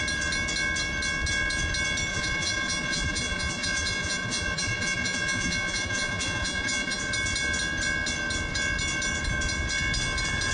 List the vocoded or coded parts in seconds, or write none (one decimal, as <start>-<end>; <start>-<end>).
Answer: 2.1-7.0